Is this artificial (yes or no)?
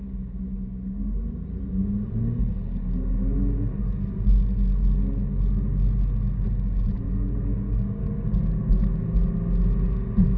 no